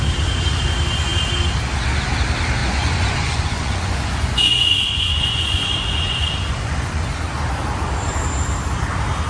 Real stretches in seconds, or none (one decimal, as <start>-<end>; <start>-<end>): 0.0-2.6; 7.2-9.3